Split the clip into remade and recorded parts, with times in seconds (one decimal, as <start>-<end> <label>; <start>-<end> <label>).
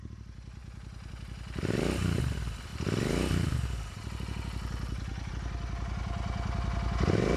0.0-7.4 recorded